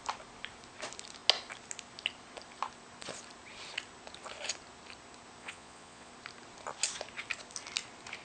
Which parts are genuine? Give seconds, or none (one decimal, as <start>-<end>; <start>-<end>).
0.0-5.4; 6.1-8.2